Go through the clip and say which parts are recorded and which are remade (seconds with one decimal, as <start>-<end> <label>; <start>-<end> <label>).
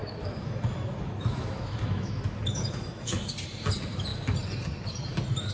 0.0-3.3 remade; 3.3-5.5 recorded